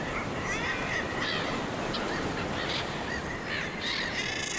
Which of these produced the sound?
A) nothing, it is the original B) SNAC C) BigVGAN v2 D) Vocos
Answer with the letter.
C